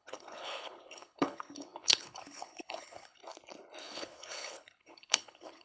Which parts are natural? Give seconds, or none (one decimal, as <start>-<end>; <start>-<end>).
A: 3.2-3.8